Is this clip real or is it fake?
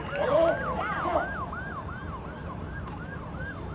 real